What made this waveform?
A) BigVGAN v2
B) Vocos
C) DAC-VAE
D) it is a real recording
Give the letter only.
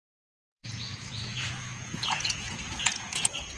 B